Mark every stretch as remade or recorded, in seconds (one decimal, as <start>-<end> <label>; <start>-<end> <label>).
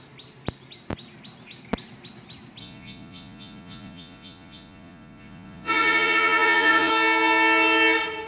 0.0-2.6 recorded; 2.6-6.9 remade; 6.9-8.3 recorded